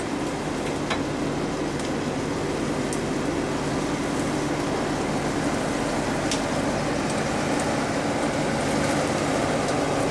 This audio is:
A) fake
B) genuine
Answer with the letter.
B